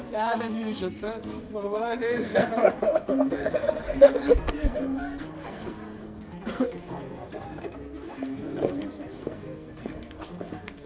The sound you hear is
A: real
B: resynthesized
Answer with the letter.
B